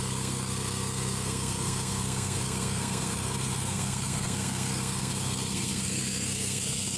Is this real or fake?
fake